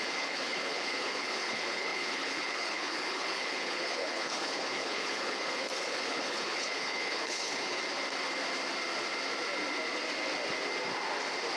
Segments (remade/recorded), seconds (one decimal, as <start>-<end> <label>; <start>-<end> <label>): 0.0-7.8 remade; 7.8-11.6 recorded